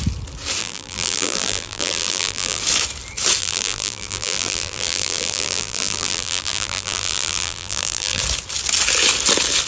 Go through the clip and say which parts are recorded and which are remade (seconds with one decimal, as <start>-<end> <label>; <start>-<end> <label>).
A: 0.0-0.6 recorded; 0.6-2.6 remade; 2.6-3.4 recorded; 3.4-8.2 remade; 8.2-9.7 recorded